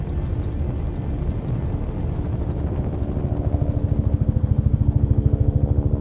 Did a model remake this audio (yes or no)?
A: no